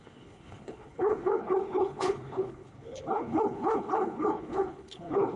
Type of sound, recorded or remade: remade